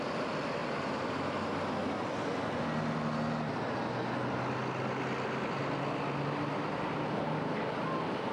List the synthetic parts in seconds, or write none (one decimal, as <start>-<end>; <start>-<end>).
none